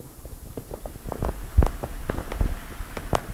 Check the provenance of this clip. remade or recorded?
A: recorded